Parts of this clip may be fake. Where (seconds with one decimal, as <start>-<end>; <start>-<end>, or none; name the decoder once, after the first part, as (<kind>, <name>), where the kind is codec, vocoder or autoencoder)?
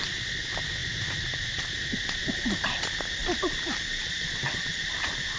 3.2-3.8 (vocoder, BigVGAN v2)